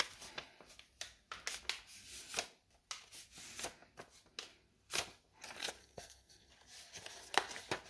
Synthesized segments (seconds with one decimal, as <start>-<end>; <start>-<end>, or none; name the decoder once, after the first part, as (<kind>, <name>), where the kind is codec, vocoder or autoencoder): 5.8-6.5 (codec, SNAC)